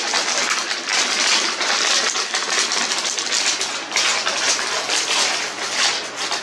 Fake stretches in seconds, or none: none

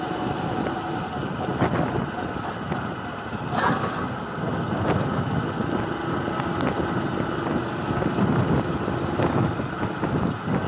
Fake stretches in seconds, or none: none

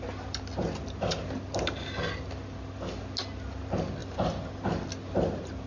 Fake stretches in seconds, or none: 4.0-4.6 (vocoder, BigVGAN v2)

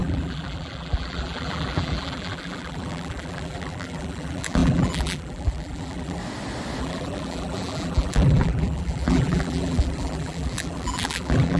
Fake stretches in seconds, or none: 0.0-6.2 (vocoder, BigVGAN v2); 6.8-11.6